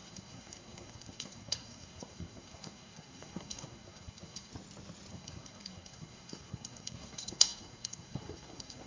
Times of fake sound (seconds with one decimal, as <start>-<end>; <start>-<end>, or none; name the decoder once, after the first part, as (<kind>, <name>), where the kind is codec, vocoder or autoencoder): 0.0-4.5 (codec, SNAC); 5.1-8.9